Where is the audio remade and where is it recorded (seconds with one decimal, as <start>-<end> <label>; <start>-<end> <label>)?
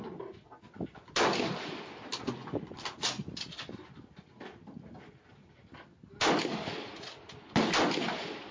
0.0-8.5 recorded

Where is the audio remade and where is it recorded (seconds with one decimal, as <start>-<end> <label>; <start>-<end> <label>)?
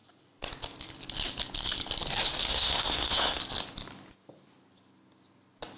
0.0-2.5 recorded; 2.5-3.4 remade; 3.4-5.8 recorded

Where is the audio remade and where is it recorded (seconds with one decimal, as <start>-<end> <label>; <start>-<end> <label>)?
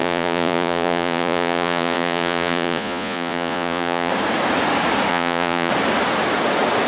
0.0-4.1 remade; 4.1-5.1 recorded; 5.1-5.7 remade; 5.7-6.9 recorded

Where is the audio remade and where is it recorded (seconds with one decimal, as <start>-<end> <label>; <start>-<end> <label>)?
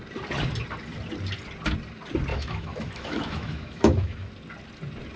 0.0-2.3 recorded; 2.3-4.3 remade; 4.3-5.2 recorded